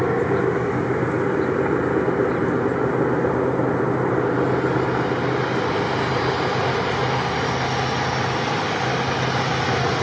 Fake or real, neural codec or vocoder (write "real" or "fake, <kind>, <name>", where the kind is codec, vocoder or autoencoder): real